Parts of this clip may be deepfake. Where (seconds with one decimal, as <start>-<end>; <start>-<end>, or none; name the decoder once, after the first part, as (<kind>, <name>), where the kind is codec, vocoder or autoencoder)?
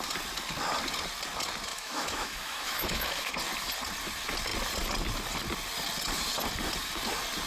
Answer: 1.7-3.3 (autoencoder, DAC-VAE)